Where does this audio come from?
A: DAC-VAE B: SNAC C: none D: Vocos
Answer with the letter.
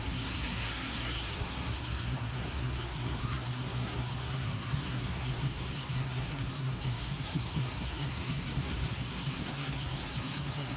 B